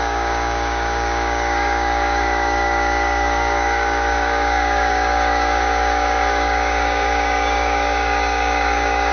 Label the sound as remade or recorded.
remade